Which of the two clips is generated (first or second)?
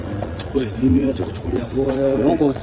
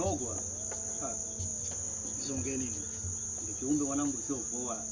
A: first